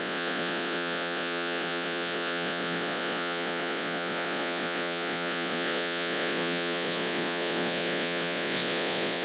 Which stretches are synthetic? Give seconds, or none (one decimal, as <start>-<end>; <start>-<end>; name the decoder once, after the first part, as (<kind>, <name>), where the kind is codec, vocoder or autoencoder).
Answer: 0.0-9.2 (vocoder, Vocos)